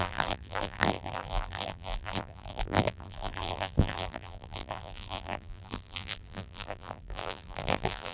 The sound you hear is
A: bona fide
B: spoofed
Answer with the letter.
B